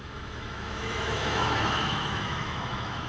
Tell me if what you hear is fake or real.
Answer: fake